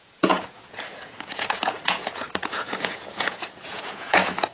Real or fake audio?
fake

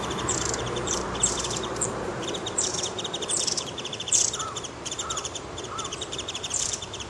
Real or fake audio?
fake